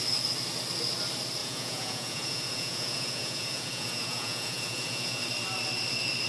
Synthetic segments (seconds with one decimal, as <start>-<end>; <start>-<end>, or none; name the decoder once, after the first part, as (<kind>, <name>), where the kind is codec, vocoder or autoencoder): 1.4-5.2 (vocoder, Vocos)